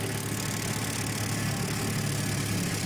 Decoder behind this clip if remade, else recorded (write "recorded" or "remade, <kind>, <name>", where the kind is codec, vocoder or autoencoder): recorded